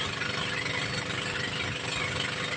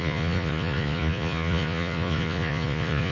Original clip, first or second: first